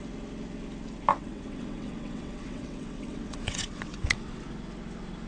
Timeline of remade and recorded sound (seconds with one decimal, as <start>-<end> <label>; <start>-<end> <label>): 0.0-1.2 recorded; 1.2-4.4 remade; 4.4-5.3 recorded